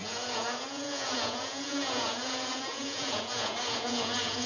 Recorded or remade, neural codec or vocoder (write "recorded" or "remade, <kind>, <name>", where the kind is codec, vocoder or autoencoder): remade, vocoder, Vocos